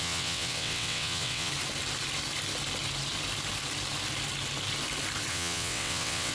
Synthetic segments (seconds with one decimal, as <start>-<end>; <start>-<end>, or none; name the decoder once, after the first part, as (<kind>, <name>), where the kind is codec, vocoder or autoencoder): 0.0-1.5 (vocoder, WaveNeXt); 5.3-6.3

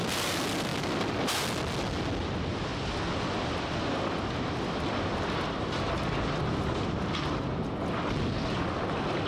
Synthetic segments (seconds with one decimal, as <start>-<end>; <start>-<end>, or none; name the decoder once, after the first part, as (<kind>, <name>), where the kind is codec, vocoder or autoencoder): none

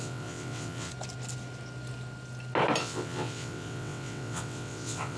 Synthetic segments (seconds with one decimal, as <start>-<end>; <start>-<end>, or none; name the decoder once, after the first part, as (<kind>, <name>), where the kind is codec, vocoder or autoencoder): 0.0-0.9 (vocoder, WaveNeXt); 2.8-5.2

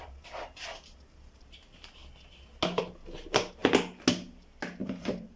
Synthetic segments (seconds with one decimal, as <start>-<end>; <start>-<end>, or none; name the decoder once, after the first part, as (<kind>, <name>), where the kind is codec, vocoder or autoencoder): 0.0-1.4 (vocoder, BigVGAN v2); 4.8-5.4

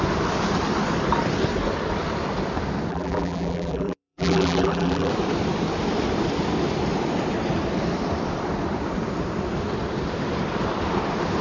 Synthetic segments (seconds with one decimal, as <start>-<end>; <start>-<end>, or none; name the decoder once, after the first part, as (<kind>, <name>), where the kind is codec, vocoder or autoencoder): 2.9-5.1 (vocoder, BigVGAN v2)

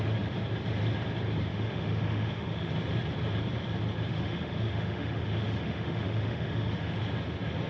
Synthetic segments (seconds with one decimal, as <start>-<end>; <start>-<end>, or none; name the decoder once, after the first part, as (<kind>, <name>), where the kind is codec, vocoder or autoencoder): 1.5-2.7 (autoencoder, DAC-VAE); 4.1-7.0